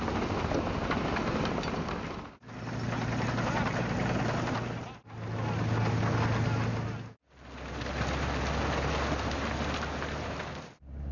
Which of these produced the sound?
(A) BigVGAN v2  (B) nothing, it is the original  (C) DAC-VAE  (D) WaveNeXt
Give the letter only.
B